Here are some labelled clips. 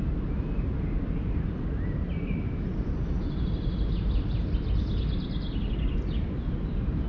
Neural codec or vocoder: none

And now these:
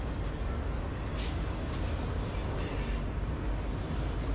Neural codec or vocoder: none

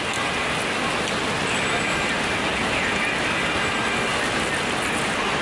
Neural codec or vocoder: none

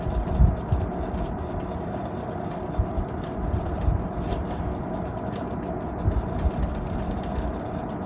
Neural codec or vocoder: none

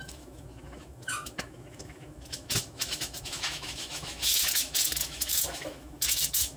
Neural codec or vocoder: autoencoder, DAC-VAE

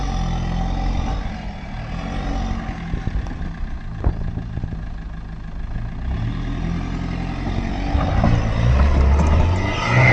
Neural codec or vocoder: none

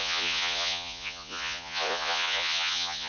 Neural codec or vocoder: vocoder, Vocos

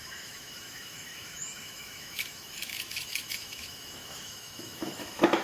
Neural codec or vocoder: autoencoder, DAC-VAE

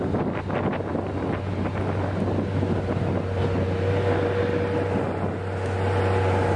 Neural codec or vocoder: none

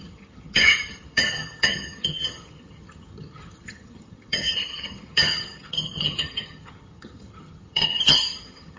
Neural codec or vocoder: vocoder, HiFi-GAN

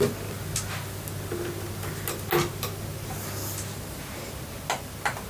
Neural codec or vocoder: none